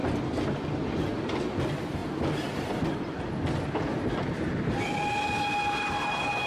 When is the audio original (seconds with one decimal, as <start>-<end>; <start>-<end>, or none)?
0.0-6.5